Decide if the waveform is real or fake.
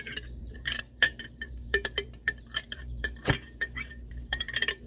fake